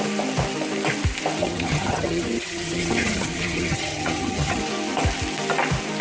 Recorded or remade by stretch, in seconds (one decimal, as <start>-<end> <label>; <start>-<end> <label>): 0.0-1.4 recorded; 1.4-4.6 remade; 4.6-6.0 recorded